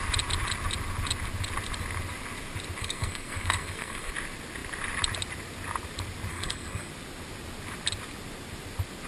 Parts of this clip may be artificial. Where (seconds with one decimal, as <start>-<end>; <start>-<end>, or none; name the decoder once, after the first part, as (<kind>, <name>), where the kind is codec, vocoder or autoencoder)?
2.8-4.1 (codec, SNAC); 6.3-6.9